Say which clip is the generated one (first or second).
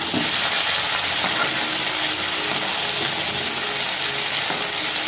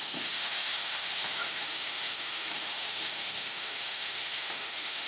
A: second